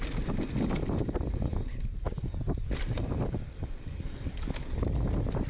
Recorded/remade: recorded